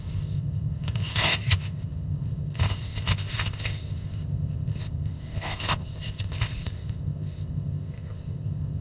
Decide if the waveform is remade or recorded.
remade